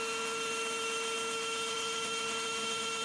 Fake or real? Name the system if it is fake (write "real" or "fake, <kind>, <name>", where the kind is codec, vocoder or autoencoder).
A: fake, autoencoder, DAC-VAE